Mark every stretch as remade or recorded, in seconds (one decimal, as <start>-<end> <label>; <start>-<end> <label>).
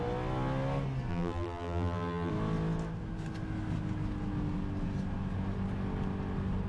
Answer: 0.0-1.1 recorded; 1.1-2.3 remade; 2.3-6.7 recorded